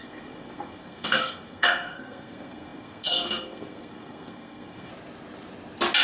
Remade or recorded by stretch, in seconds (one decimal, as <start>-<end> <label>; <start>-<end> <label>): 0.0-4.9 remade; 4.9-6.0 recorded